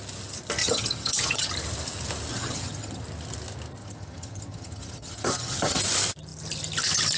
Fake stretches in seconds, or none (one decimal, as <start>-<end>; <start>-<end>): 0.6-1.5; 2.3-3.0; 3.8-5.8